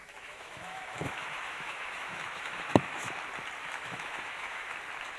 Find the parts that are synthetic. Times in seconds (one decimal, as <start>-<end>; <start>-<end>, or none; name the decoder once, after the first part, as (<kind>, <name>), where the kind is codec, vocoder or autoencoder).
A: 0.0-3.1 (autoencoder, DAC-VAE); 3.6-4.7